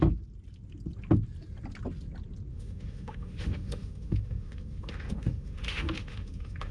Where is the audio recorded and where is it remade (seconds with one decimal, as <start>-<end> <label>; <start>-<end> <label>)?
0.0-2.5 recorded; 2.5-6.7 remade